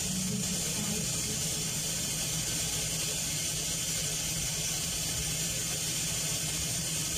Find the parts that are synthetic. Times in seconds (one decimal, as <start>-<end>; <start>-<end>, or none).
none